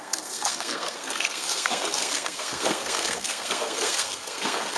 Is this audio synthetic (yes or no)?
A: yes